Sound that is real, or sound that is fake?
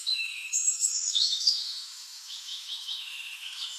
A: fake